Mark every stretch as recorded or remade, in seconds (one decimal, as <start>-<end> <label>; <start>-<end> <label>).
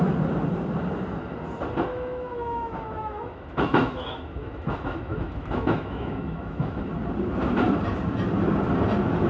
0.0-1.9 recorded; 1.9-6.8 remade; 6.8-9.3 recorded